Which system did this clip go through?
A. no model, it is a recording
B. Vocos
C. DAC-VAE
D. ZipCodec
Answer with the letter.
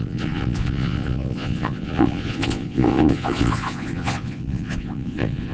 B